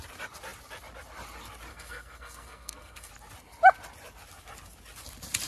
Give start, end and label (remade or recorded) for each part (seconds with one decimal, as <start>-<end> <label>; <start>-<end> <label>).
0.0-1.7 recorded; 1.7-3.1 remade; 3.1-5.5 recorded